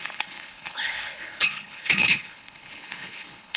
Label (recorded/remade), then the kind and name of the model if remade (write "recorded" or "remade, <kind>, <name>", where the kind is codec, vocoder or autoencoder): remade, codec, HILCodec